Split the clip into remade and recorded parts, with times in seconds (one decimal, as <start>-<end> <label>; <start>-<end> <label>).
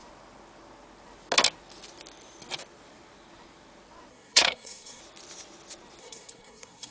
0.0-4.1 recorded; 4.1-5.0 remade; 5.0-6.0 recorded; 6.0-6.9 remade